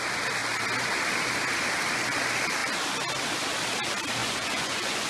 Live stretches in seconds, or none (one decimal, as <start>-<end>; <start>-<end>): 0.0-4.2